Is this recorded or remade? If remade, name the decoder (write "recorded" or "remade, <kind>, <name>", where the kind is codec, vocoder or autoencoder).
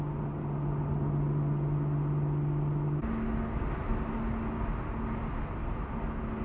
recorded